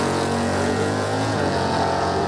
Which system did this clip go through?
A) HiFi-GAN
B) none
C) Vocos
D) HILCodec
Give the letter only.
C